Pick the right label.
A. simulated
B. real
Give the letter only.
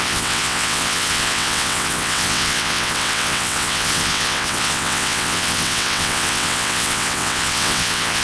A